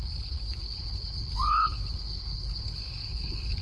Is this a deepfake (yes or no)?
yes